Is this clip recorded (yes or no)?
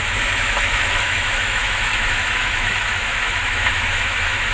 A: no